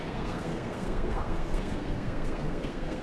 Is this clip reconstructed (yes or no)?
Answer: yes